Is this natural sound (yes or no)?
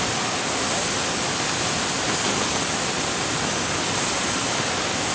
yes